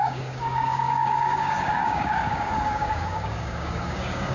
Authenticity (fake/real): fake